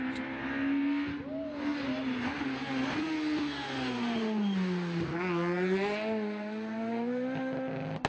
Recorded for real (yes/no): yes